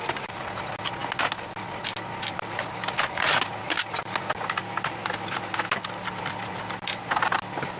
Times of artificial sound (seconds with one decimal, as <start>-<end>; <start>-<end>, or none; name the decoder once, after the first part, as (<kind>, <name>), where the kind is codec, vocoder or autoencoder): none

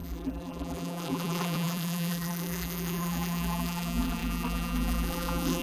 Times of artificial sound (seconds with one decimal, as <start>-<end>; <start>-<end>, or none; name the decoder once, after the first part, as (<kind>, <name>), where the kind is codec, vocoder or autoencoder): 0.0-5.6 (vocoder, BigVGAN v2)